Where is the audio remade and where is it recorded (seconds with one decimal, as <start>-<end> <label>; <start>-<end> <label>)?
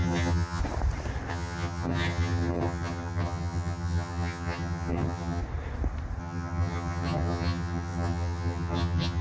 0.0-0.6 remade; 0.6-1.3 recorded; 1.3-5.4 remade; 5.4-6.2 recorded; 6.2-9.2 remade